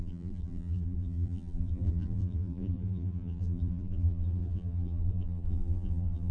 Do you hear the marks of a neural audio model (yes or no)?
yes